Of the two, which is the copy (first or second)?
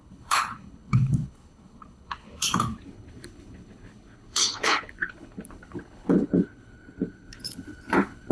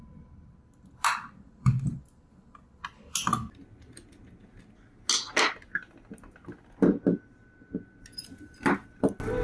first